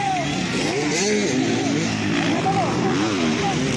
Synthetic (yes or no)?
no